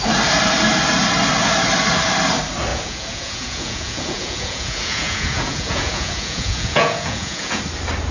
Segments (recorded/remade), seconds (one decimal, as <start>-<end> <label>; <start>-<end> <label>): 0.0-2.7 recorded; 2.7-7.6 remade; 7.6-8.1 recorded